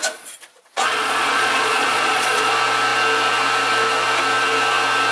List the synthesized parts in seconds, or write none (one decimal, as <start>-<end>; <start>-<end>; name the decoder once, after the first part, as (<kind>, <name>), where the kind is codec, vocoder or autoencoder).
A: 0.0-2.5 (vocoder, Vocos)